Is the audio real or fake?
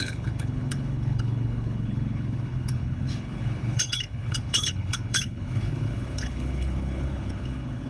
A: fake